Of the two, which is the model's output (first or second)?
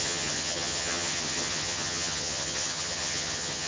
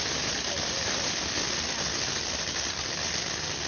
first